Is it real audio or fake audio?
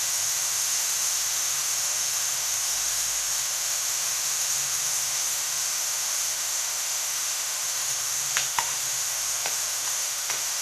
fake